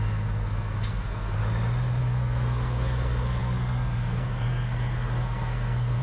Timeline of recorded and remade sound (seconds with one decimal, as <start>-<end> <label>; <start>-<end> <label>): 0.0-1.4 remade; 1.4-2.0 recorded; 2.0-6.0 remade